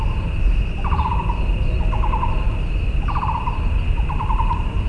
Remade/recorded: recorded